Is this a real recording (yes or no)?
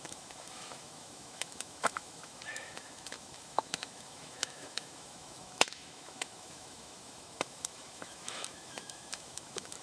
no